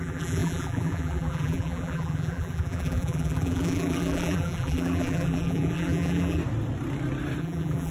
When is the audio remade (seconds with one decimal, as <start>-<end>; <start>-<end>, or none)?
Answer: 0.0-6.4; 7.4-7.9